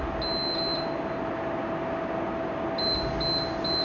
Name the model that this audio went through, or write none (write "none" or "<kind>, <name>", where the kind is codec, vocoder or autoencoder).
none